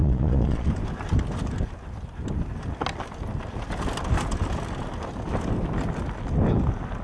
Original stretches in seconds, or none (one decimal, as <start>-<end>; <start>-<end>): 0.7-7.0